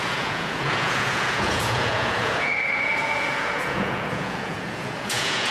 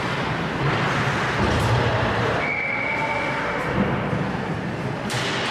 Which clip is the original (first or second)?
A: second